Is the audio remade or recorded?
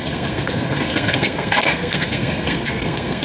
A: remade